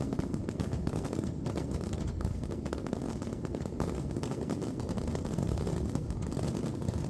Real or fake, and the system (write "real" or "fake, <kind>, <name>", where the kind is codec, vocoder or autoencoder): fake, codec, SNAC